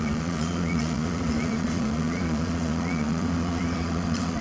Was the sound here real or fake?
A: fake